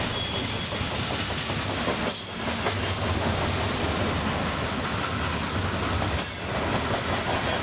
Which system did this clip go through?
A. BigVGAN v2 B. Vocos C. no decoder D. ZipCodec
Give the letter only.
C